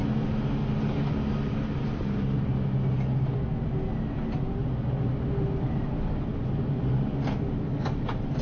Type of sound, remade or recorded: recorded